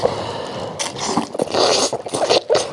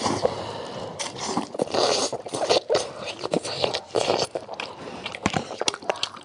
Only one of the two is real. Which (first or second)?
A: first